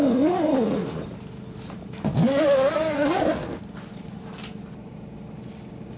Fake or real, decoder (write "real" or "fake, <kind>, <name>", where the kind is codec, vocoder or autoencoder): real